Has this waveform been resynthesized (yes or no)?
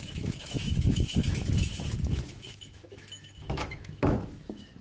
yes